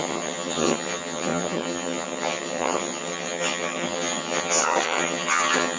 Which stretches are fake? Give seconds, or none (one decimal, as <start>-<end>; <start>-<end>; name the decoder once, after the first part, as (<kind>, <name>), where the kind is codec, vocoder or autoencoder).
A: 0.0-5.8 (vocoder, HiFi-GAN)